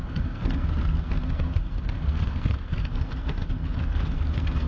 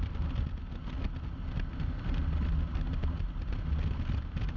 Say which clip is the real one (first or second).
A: second